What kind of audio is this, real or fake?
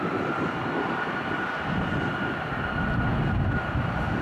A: fake